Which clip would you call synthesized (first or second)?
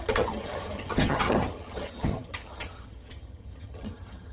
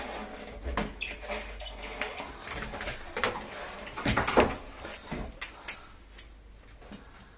first